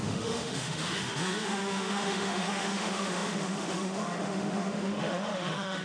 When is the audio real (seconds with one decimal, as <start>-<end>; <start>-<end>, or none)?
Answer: none